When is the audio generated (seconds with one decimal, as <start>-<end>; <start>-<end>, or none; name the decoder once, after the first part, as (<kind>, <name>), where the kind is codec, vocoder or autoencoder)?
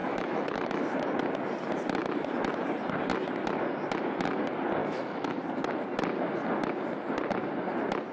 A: 0.0-0.8 (autoencoder, DAC-VAE); 4.8-5.4